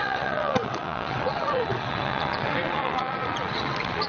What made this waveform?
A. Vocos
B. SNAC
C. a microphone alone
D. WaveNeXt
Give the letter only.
D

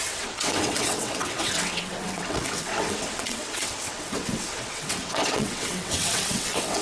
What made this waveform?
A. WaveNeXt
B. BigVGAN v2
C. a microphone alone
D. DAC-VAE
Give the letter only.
A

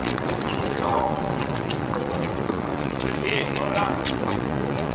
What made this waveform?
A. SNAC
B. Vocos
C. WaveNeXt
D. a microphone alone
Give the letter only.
C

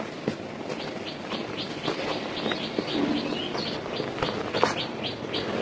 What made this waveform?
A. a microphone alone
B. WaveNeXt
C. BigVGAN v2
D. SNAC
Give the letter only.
A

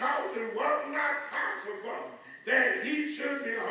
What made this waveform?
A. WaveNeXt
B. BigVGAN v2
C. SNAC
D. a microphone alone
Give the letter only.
D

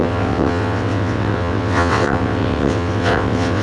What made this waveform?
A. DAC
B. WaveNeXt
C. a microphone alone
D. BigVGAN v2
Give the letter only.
B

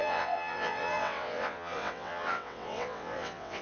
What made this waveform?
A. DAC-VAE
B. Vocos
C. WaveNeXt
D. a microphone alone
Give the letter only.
C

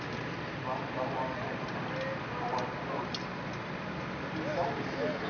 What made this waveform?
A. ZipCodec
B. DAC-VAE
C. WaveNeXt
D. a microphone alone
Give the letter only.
D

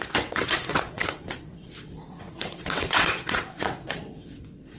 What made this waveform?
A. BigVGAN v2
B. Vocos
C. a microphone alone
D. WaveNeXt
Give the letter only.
D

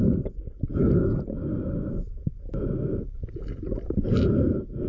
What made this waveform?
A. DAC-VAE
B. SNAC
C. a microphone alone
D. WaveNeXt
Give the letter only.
C